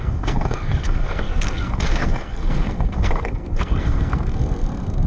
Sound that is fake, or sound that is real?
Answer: fake